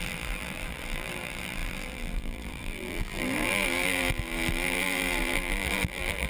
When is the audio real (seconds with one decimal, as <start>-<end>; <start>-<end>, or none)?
none